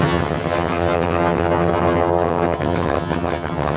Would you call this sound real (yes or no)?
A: no